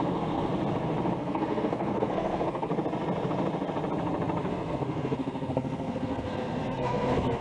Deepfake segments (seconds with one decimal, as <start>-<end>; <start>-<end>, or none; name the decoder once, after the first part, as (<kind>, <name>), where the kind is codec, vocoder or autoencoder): 0.0-0.5 (codec, SNAC); 1.2-2.7; 4.5-7.4